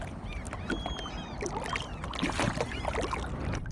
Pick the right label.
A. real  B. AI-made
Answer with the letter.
A